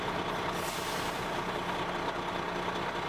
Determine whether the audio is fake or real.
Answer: real